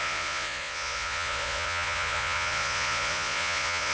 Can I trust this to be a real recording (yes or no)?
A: no